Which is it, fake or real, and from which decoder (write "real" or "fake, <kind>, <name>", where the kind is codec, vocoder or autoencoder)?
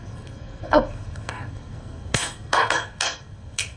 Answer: fake, codec, SNAC